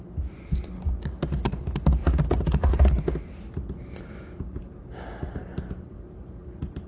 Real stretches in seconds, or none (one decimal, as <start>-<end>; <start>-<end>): 0.0-2.0; 2.8-4.2; 4.8-6.9